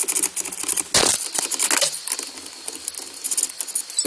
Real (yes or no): yes